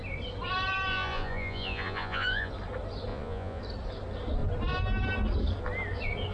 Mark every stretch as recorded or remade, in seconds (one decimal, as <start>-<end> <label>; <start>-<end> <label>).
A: 0.0-0.9 recorded; 0.9-2.5 remade; 2.5-3.1 recorded; 3.1-3.6 remade; 3.6-6.3 recorded